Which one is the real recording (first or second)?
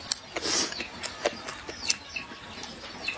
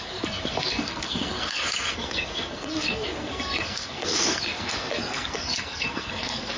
first